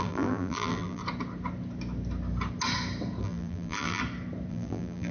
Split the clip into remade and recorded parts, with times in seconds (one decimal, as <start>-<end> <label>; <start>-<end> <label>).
0.0-1.0 remade; 1.0-3.2 recorded; 3.2-4.0 remade; 4.0-4.5 recorded; 4.5-5.1 remade